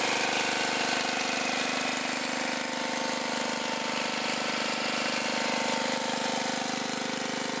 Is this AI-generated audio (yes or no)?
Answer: no